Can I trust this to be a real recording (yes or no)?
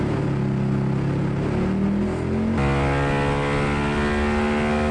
yes